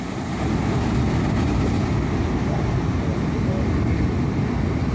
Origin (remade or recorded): recorded